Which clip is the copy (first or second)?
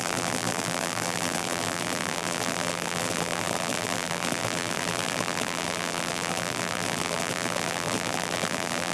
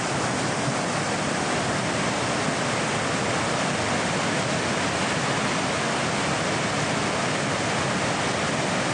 first